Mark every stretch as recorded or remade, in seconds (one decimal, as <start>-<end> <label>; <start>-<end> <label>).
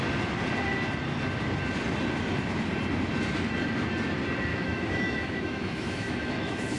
0.0-4.5 recorded; 4.5-6.8 remade